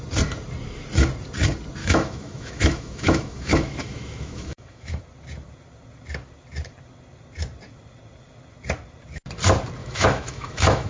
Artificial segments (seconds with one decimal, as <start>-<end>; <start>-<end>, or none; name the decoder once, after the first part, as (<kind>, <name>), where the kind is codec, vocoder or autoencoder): 1.8-5.0 (autoencoder, DAC-VAE); 9.8-10.9